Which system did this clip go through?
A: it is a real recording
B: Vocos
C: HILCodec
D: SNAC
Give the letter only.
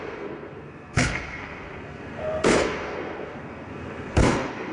D